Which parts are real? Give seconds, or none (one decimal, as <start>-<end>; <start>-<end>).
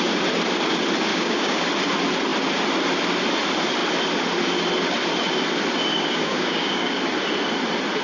0.0-1.1; 1.6-5.9; 7.0-8.0